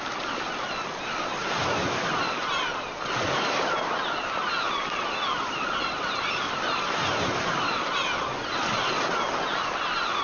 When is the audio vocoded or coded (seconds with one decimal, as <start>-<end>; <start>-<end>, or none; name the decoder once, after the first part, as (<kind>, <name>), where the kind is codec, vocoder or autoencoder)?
none